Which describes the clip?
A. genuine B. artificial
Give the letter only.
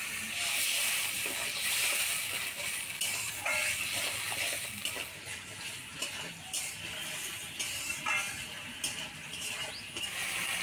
A